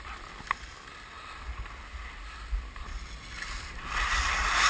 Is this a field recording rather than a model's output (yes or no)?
yes